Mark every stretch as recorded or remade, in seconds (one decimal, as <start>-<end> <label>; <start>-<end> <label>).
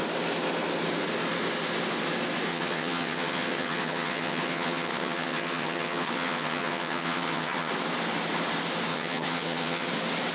0.0-2.5 recorded; 2.5-7.7 remade; 7.7-8.9 recorded; 8.9-9.9 remade; 9.9-10.3 recorded